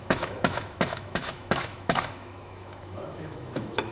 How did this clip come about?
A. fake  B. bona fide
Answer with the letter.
A